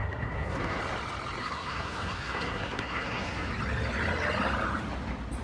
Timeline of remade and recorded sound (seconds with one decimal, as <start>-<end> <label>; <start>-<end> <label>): 0.0-0.8 remade; 0.8-1.4 recorded; 1.4-3.5 remade; 3.5-5.4 recorded